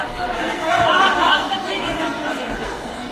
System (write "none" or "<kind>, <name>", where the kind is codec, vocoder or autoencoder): codec, SNAC